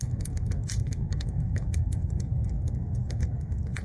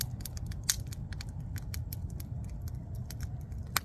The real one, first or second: second